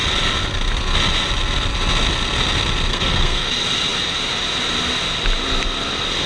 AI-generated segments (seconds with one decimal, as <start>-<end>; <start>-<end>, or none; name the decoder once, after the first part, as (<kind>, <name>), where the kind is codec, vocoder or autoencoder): 2.9-3.5 (codec, SNAC)